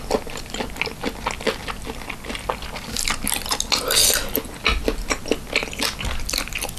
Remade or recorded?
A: recorded